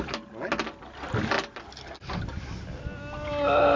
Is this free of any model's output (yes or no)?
yes